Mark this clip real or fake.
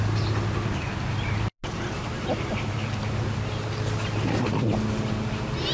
real